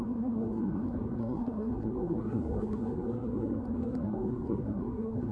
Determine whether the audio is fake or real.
fake